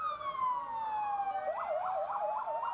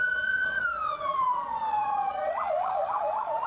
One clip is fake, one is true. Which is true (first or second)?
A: first